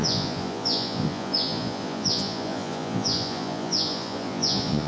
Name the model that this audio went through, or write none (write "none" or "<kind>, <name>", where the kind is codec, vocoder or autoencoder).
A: vocoder, Vocos